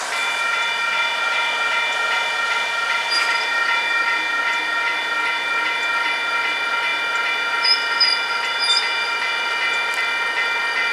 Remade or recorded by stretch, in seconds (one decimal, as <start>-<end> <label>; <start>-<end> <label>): 0.0-10.9 recorded